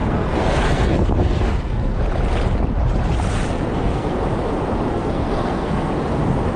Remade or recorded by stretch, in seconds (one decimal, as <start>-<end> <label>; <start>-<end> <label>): 0.0-2.0 remade; 2.0-3.5 recorded; 3.5-4.2 remade; 4.2-4.9 recorded; 4.9-5.9 remade; 5.9-6.6 recorded